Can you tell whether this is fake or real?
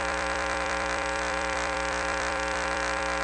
fake